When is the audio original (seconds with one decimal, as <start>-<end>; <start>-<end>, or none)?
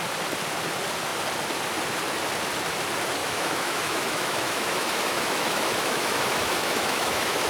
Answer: 0.0-3.2